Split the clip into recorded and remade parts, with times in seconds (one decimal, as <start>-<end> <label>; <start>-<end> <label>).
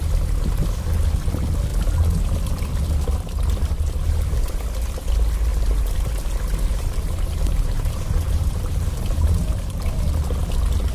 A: 0.0-5.5 recorded; 5.5-6.1 remade; 6.1-6.7 recorded; 6.7-10.2 remade; 10.2-10.9 recorded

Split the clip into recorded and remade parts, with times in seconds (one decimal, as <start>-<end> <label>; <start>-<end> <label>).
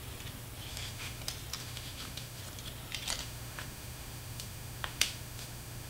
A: 0.0-0.7 recorded; 0.7-1.2 remade; 1.2-1.6 recorded; 1.6-2.4 remade; 2.4-3.2 recorded; 3.2-5.9 remade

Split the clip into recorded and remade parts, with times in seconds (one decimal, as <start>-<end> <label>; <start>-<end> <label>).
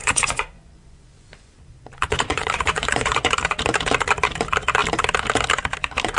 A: 0.0-3.3 remade; 3.3-6.2 recorded